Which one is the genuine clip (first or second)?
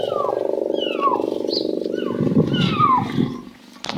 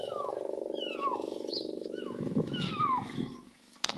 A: first